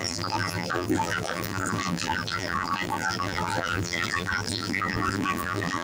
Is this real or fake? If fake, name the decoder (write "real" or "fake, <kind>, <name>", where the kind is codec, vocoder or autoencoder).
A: fake, vocoder, BigVGAN v2